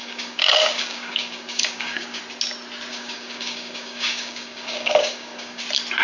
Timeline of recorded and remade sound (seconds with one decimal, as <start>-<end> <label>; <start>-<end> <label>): 0.0-2.2 remade; 2.2-2.9 recorded; 2.9-5.6 remade; 5.6-6.0 recorded